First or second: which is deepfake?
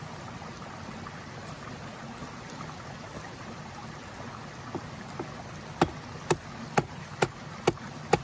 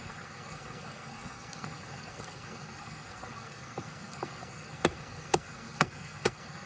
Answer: second